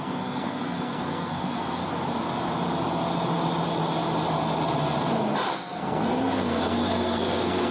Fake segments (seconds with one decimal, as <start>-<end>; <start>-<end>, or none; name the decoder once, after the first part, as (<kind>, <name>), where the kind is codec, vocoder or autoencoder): 0.0-1.8 (codec, SNAC); 5.5-7.7